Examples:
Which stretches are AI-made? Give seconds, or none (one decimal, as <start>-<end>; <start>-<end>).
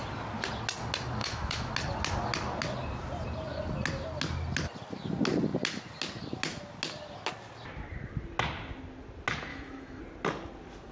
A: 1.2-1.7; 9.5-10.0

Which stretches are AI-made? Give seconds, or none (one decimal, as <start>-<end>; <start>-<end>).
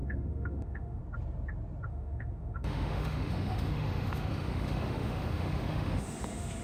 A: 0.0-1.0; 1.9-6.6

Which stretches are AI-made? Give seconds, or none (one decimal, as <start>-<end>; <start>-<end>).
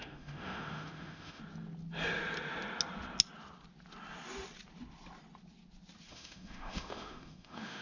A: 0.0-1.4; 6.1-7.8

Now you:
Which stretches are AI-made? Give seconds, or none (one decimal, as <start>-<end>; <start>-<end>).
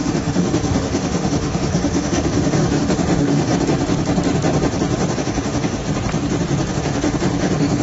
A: 0.0-3.5; 5.2-5.8; 6.7-7.8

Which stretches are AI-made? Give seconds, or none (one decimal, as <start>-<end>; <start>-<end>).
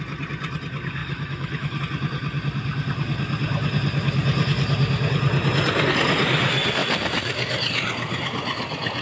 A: 1.0-1.8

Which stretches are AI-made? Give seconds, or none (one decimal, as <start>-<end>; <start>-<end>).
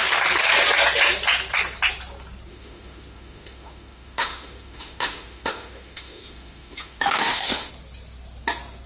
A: 2.5-7.7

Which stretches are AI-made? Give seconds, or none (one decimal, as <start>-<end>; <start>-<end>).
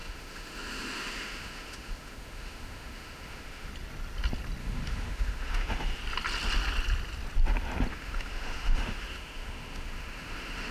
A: 0.0-3.7; 4.6-6.0; 7.9-10.7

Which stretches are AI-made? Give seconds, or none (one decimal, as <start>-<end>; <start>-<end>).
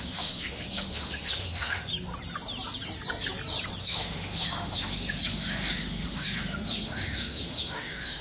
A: 0.0-1.9; 3.8-8.2